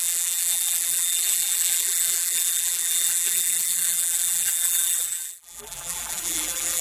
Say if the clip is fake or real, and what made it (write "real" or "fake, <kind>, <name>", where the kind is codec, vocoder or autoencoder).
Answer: fake, vocoder, BigVGAN v2